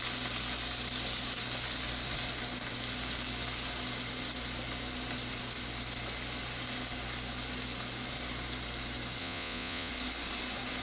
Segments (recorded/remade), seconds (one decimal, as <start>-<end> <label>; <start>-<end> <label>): 0.0-9.2 recorded; 9.2-9.9 remade; 9.9-10.8 recorded